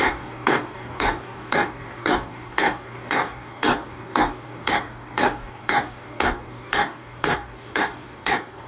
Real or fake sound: fake